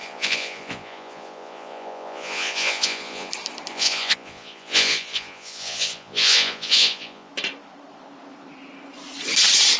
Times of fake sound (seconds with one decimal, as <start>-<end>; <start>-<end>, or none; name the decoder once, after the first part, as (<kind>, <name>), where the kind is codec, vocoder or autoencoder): 0.0-3.3 (vocoder, Vocos); 3.7-7.3